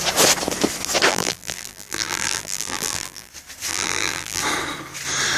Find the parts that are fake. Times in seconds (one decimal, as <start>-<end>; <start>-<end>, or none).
1.1-3.3; 3.7-4.4